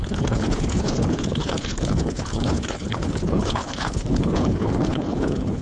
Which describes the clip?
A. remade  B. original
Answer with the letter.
A